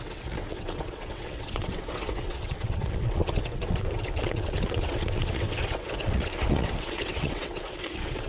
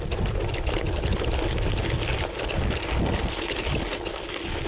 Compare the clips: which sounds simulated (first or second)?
first